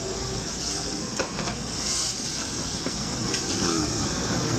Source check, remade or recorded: remade